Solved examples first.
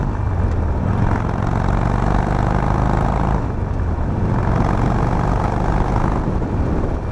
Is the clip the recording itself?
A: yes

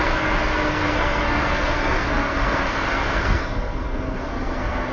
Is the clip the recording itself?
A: no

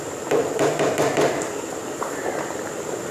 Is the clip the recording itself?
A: no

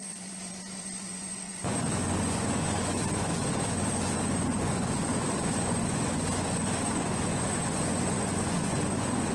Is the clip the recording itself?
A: no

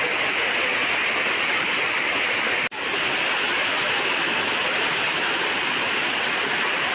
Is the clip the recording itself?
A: yes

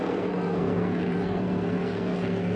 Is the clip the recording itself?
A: no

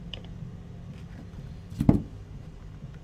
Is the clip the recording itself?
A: no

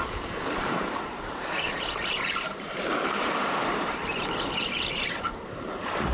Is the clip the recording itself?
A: no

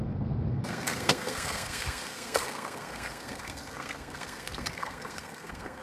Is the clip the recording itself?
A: no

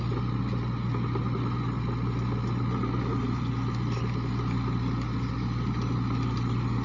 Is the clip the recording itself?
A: yes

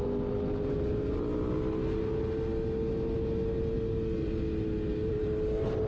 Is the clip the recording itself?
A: yes